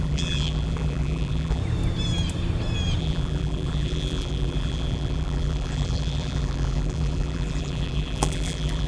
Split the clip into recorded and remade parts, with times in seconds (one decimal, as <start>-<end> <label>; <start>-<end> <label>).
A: 0.0-1.6 remade; 1.6-3.0 recorded; 3.0-8.9 remade